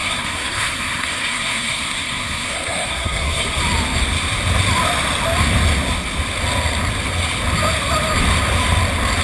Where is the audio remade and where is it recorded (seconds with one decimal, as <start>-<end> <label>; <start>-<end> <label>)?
0.0-3.6 remade; 3.6-9.2 recorded